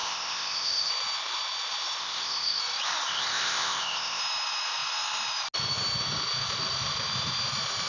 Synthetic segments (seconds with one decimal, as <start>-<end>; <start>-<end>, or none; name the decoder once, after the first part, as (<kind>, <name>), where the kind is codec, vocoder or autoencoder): 0.0-0.9 (codec, ZipCodec); 2.0-2.6; 3.1-4.2